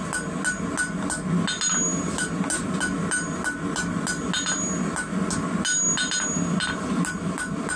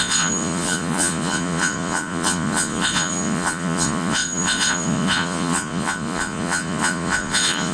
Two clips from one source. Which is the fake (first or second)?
second